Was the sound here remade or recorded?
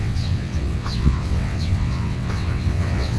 remade